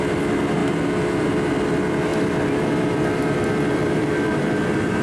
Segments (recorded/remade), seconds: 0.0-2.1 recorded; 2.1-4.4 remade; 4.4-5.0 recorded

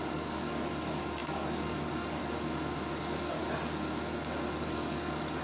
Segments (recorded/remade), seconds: 0.0-2.2 remade; 2.2-2.9 recorded; 2.9-3.4 remade; 3.4-4.5 recorded; 4.5-5.4 remade

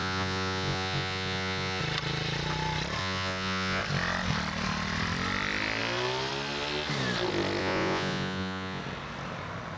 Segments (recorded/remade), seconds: 0.0-1.8 remade; 1.8-3.0 recorded; 3.0-3.8 remade; 3.8-7.6 recorded; 7.6-8.8 remade; 8.8-9.8 recorded

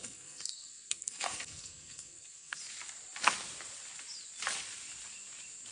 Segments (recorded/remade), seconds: 0.0-2.6 remade; 2.6-5.7 recorded

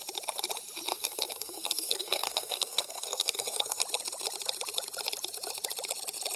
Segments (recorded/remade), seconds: 0.0-0.9 recorded; 0.9-3.8 remade; 3.8-6.4 recorded

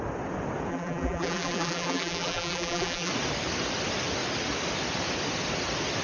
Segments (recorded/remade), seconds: 0.0-0.7 recorded; 0.7-3.1 remade; 3.1-6.0 recorded